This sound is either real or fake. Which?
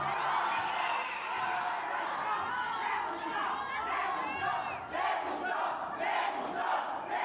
real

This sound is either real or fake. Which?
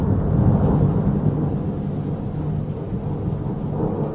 real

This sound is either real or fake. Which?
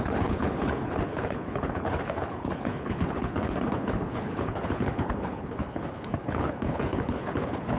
fake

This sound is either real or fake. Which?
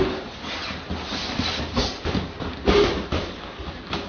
real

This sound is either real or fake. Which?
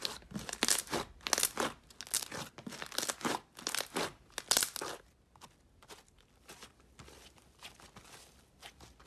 real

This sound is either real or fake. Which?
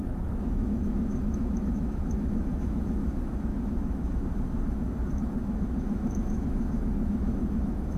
fake